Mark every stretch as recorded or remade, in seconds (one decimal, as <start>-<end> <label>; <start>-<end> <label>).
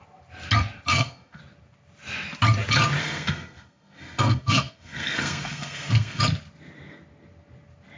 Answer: 0.0-0.9 recorded; 0.9-1.4 remade; 1.4-3.0 recorded; 3.0-6.2 remade; 6.2-8.0 recorded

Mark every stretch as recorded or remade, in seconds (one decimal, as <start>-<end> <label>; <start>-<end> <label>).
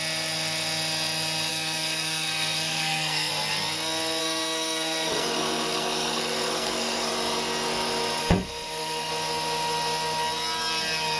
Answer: 0.0-1.5 recorded; 1.5-3.3 remade; 3.3-4.2 recorded; 4.2-7.1 remade; 7.1-8.2 recorded; 8.2-9.1 remade; 9.1-11.2 recorded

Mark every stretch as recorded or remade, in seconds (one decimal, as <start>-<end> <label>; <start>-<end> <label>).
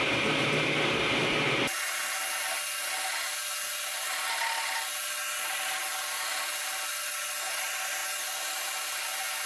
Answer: 0.0-9.5 recorded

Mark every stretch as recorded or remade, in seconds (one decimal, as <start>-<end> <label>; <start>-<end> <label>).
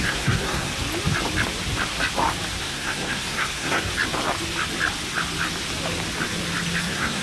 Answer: 0.0-0.7 remade; 0.7-2.6 recorded; 2.6-3.9 remade; 3.9-6.8 recorded; 6.8-7.2 remade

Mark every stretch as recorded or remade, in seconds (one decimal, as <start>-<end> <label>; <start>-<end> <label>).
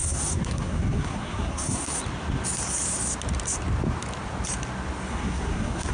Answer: 0.0-2.0 remade; 2.0-5.1 recorded; 5.1-5.9 remade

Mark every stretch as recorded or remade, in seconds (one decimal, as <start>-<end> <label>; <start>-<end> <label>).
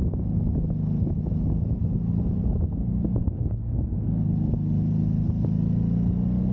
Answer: 0.0-3.2 recorded; 3.2-3.8 remade; 3.8-6.5 recorded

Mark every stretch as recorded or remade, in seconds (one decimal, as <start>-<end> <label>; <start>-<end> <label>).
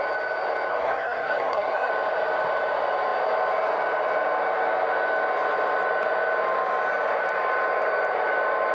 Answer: 0.0-0.7 recorded; 0.7-1.9 remade; 1.9-8.7 recorded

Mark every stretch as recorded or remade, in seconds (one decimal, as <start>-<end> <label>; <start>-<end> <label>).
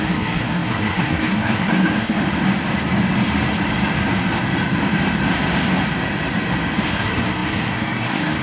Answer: 0.0-2.2 remade; 2.2-6.9 recorded; 6.9-8.4 remade